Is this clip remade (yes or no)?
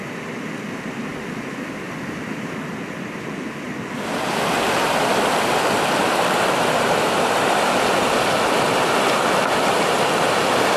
no